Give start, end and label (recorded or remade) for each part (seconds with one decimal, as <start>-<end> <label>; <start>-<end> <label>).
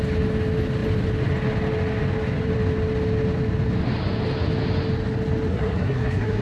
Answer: 0.0-5.5 recorded; 5.5-6.4 remade